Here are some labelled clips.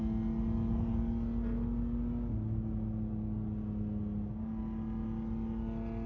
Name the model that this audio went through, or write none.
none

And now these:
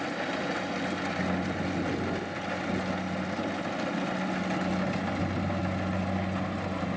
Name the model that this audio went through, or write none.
none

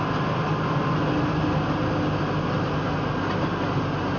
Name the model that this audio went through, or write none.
none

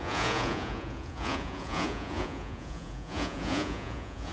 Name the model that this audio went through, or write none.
vocoder, Vocos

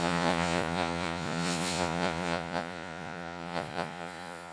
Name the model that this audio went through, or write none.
vocoder, Vocos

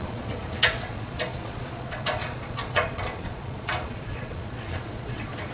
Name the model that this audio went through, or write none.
vocoder, Vocos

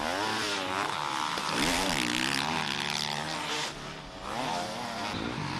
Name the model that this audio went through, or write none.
none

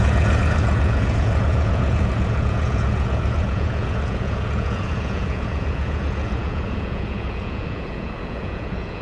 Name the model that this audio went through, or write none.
vocoder, Vocos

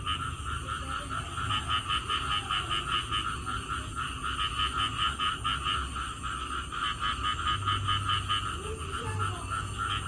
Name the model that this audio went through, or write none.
none